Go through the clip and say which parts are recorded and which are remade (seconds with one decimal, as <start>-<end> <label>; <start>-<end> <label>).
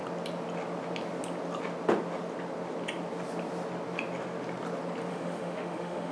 0.0-5.1 recorded; 5.1-6.1 remade